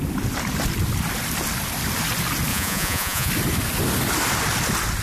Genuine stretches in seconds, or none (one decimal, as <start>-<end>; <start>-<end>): 0.0-2.5; 3.3-5.0